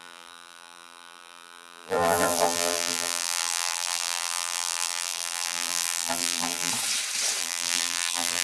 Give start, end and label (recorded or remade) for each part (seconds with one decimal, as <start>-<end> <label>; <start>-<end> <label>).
0.0-6.7 remade; 6.7-7.4 recorded; 7.4-8.4 remade